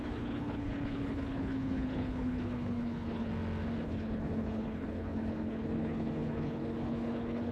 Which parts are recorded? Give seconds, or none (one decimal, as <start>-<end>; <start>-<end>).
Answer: 3.3-3.8